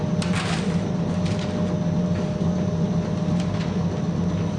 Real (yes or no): yes